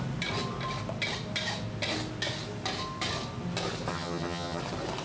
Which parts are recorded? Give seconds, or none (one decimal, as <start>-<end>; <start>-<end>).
0.0-3.9; 4.6-5.0